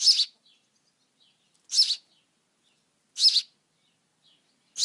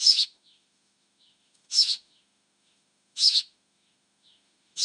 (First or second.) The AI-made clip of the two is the second